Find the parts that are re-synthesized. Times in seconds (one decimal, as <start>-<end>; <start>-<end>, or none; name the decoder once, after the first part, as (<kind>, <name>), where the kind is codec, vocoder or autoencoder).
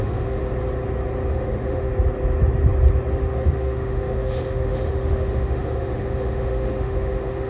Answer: 0.0-0.4 (autoencoder, DAC-VAE); 1.3-1.9; 3.1-7.5